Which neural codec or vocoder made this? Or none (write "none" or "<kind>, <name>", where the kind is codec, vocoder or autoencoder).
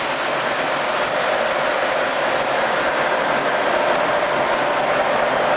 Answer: none